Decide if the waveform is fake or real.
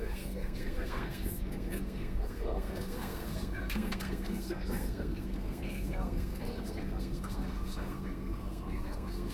fake